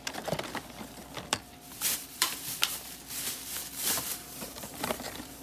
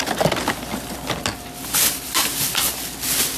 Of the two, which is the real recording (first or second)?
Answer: second